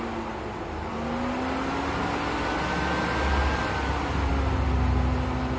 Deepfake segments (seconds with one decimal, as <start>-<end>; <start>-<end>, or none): none